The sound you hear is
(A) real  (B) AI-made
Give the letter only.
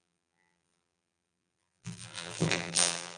B